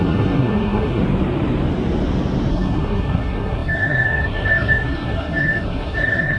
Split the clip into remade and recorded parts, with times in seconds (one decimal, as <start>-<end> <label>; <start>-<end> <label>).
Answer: 0.0-1.0 remade; 1.0-2.5 recorded; 2.5-6.4 remade